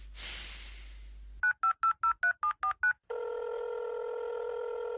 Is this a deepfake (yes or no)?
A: no